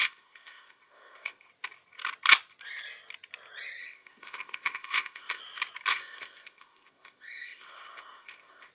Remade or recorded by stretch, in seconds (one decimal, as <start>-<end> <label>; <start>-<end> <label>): 0.0-1.5 remade; 1.5-3.8 recorded; 3.8-5.4 remade; 5.4-5.9 recorded; 5.9-8.7 remade

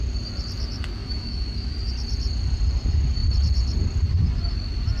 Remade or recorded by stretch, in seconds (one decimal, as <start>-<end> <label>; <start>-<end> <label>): 0.0-1.0 recorded; 1.0-1.7 remade; 1.7-5.0 recorded

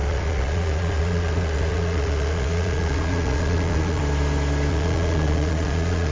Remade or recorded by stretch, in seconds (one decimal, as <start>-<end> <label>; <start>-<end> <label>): 0.0-4.0 remade; 4.0-4.7 recorded; 4.7-6.1 remade

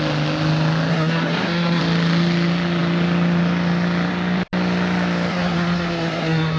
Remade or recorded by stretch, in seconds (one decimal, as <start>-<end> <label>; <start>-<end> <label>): 0.0-0.9 recorded; 0.9-1.8 remade; 1.8-5.3 recorded; 5.3-6.6 remade

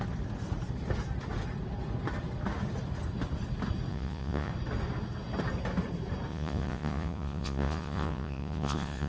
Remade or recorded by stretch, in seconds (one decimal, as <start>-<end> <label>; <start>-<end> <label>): 0.0-3.9 recorded; 3.9-4.5 remade; 4.5-6.3 recorded; 6.3-9.1 remade